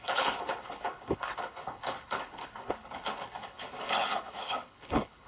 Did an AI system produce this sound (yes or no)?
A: yes